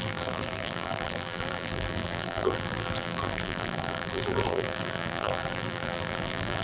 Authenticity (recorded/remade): remade